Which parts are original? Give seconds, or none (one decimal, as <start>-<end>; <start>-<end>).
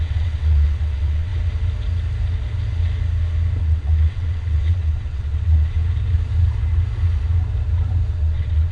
1.3-3.6; 5.8-8.1